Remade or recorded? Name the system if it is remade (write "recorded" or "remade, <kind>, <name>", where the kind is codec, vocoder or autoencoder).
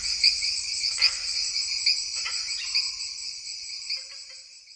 recorded